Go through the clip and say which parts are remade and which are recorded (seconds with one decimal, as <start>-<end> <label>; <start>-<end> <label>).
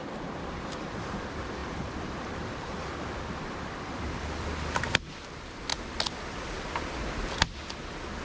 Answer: 0.0-1.0 remade; 1.0-1.6 recorded; 1.6-5.0 remade; 5.0-8.2 recorded